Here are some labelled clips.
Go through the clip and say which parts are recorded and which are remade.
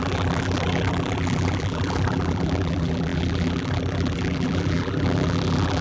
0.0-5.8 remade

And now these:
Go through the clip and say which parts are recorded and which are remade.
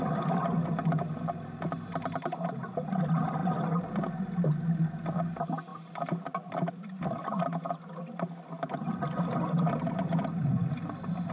0.0-11.3 recorded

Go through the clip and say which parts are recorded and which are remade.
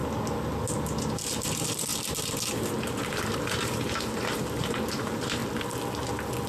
0.0-1.2 recorded; 1.2-5.4 remade; 5.4-6.5 recorded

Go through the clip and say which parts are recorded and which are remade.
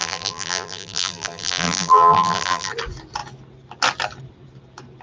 0.0-2.7 remade; 2.7-5.0 recorded